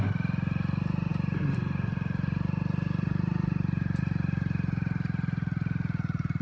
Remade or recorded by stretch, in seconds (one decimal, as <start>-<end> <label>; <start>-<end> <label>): 0.0-6.4 recorded